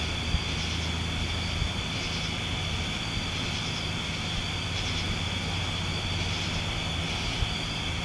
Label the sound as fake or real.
real